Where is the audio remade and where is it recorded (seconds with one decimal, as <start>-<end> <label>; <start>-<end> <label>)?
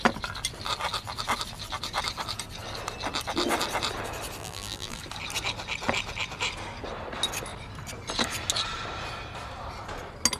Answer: 0.0-4.4 recorded; 4.4-5.0 remade; 5.0-10.4 recorded